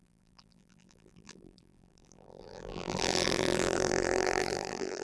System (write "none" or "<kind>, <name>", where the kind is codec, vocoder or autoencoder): vocoder, BigVGAN v2